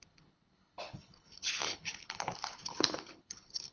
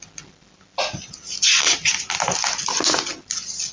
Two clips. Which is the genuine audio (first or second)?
second